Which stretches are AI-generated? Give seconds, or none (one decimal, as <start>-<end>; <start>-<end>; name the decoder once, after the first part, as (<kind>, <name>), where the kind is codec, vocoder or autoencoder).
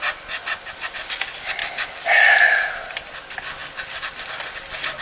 0.0-0.4 (vocoder, BigVGAN v2); 1.1-1.6; 2.3-5.0